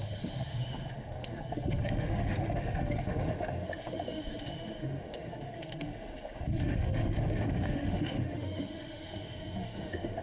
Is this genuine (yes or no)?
no